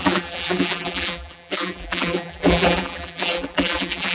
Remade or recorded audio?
remade